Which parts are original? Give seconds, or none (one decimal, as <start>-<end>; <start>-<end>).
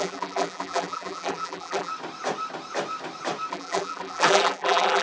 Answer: 1.9-3.5